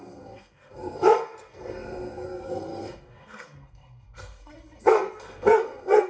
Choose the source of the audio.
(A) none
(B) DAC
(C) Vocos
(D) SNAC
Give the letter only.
D